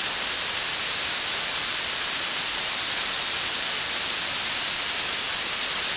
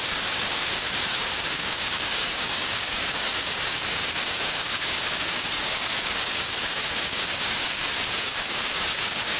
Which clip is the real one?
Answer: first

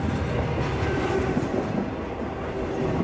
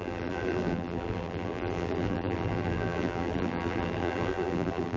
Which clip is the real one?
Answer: first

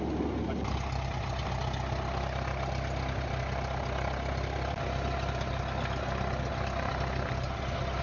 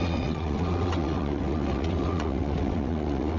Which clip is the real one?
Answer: first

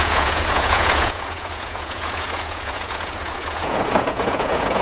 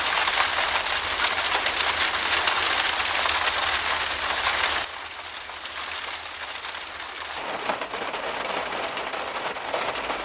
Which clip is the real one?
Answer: second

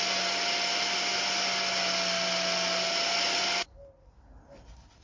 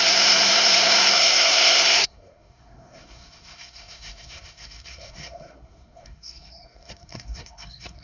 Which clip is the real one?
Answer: first